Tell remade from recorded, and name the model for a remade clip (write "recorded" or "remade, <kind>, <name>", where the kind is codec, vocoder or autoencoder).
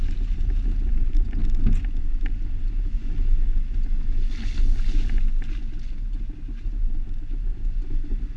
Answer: recorded